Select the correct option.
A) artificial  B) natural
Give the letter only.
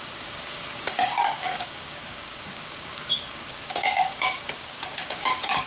A